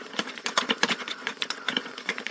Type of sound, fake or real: fake